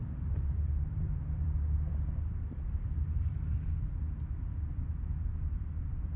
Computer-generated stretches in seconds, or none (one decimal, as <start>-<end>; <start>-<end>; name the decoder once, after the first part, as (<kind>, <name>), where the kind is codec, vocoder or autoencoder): 0.0-3.7 (vocoder, BigVGAN v2)